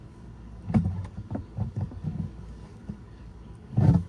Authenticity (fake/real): fake